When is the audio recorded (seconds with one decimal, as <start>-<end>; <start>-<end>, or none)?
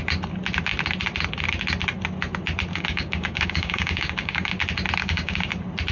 0.0-2.7; 4.5-5.0; 5.5-5.9